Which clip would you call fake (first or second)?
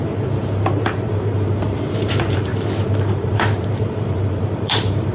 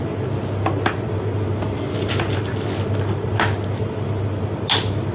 first